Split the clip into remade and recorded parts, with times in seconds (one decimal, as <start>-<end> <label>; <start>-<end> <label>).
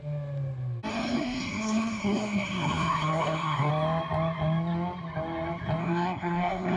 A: 0.0-0.9 recorded; 0.9-3.7 remade; 3.7-5.8 recorded; 5.8-6.8 remade